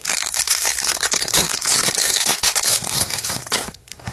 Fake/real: fake